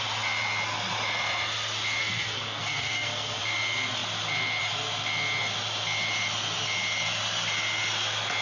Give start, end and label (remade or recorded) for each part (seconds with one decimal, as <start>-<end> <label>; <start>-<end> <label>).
0.0-2.0 recorded; 2.0-3.4 remade; 3.4-8.4 recorded